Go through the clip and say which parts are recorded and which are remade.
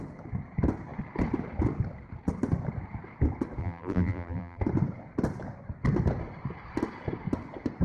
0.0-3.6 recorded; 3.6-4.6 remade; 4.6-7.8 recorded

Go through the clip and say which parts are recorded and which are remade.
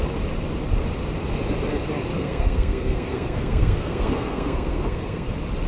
0.0-2.1 recorded; 2.1-5.3 remade; 5.3-5.7 recorded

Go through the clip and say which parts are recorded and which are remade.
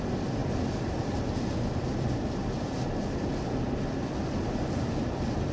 0.0-0.4 remade; 0.4-3.7 recorded; 3.7-5.5 remade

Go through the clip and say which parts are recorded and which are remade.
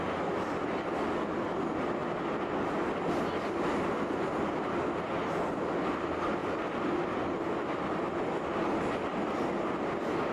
0.0-10.3 recorded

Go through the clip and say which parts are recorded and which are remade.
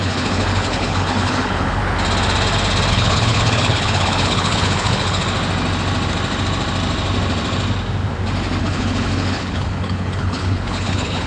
0.0-1.8 remade; 1.8-2.9 recorded; 2.9-5.2 remade; 5.2-8.6 recorded; 8.6-11.3 remade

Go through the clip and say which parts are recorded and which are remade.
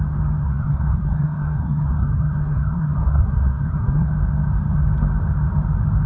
0.0-0.4 recorded; 0.4-4.1 remade; 4.1-6.1 recorded